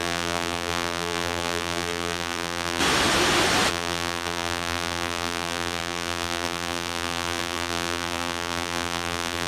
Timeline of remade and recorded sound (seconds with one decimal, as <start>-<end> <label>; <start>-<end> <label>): 0.0-2.8 remade; 2.8-3.7 recorded; 3.7-9.5 remade

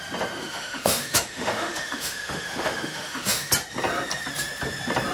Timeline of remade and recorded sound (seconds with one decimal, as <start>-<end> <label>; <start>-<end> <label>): 0.0-0.4 recorded; 0.4-3.5 remade; 3.5-5.1 recorded

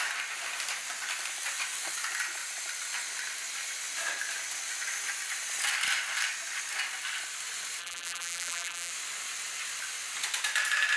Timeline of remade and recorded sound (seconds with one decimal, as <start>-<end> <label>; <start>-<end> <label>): 0.0-7.8 recorded; 7.8-8.9 remade; 8.9-11.0 recorded

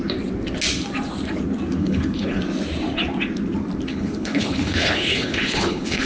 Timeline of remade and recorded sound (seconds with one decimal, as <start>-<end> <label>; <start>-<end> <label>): 0.0-1.8 recorded; 1.8-2.4 remade; 2.4-3.9 recorded; 3.9-6.1 remade